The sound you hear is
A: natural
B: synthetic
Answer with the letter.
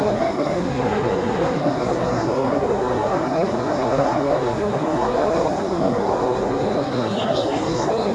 B